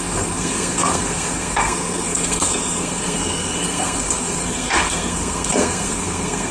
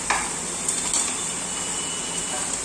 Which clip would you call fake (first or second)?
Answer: first